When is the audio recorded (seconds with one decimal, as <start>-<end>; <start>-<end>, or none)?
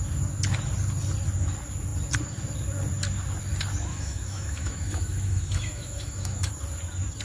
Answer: 0.0-3.9; 6.5-7.2